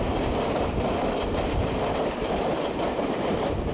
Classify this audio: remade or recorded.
recorded